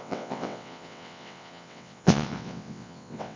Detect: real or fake fake